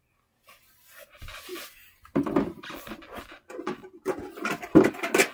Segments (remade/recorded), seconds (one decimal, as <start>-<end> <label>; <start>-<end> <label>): 0.0-5.3 recorded